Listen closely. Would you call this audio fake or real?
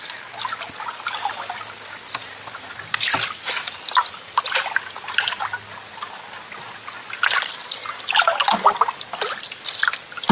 real